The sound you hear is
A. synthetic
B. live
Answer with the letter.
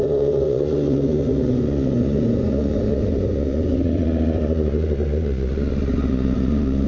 A